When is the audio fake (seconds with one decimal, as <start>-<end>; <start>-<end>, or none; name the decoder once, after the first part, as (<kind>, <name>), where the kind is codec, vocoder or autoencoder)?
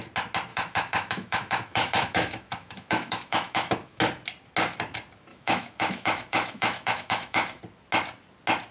0.5-4.0 (autoencoder, DAC-VAE); 5.3-7.6